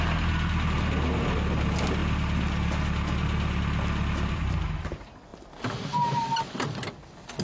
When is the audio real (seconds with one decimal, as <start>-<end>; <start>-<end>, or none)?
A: 0.0-7.4